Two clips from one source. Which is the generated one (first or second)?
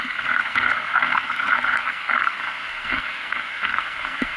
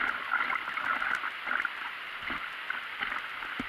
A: first